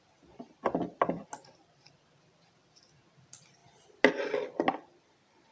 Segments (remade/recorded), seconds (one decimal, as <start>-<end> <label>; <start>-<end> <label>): 0.0-5.5 recorded